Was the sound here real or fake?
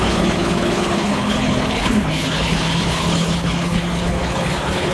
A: fake